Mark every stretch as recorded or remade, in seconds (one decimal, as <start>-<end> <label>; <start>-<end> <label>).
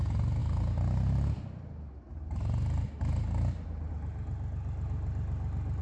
0.0-5.8 recorded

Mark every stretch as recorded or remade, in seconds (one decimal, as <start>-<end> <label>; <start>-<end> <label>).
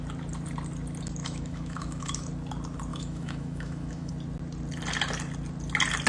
0.0-1.2 recorded; 1.2-2.3 remade; 2.3-2.9 recorded; 2.9-4.1 remade; 4.1-6.1 recorded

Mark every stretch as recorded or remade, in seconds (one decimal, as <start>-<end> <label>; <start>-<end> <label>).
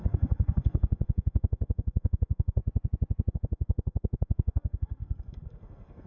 0.0-2.6 remade; 2.6-3.3 recorded; 3.3-6.1 remade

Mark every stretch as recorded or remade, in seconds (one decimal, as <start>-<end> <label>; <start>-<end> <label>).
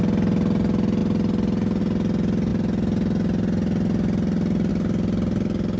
0.0-5.8 recorded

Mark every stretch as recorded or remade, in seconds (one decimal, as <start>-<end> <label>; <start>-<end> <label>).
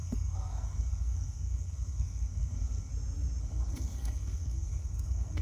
0.0-2.9 remade; 2.9-3.4 recorded; 3.4-5.4 remade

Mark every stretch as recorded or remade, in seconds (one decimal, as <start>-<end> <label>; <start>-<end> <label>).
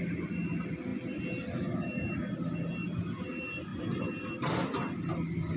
0.0-5.6 recorded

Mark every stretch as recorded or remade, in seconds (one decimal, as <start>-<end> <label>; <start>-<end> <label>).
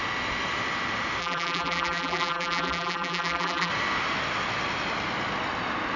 0.0-1.2 recorded; 1.2-3.7 remade; 3.7-6.0 recorded